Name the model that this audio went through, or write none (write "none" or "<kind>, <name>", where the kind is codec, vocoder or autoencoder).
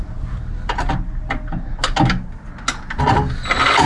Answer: none